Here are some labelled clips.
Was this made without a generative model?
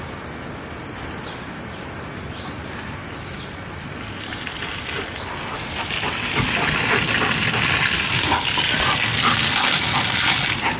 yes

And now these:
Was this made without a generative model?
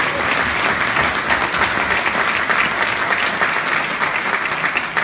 yes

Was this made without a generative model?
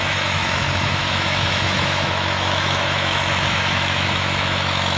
no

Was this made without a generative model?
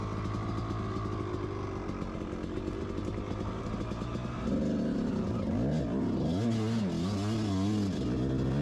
yes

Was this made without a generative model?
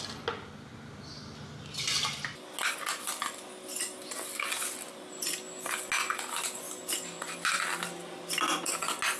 yes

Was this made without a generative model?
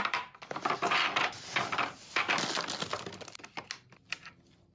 yes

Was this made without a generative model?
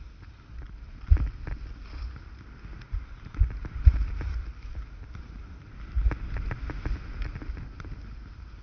yes